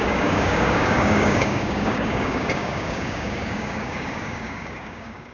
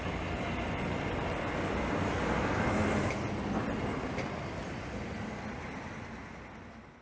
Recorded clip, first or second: second